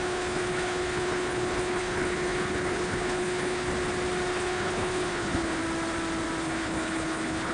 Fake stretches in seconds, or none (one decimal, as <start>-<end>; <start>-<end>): 0.0-3.7; 4.3-5.6; 6.4-7.5